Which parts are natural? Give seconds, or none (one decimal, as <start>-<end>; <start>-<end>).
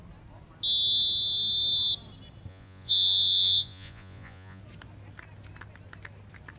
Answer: 0.0-2.5; 4.6-6.6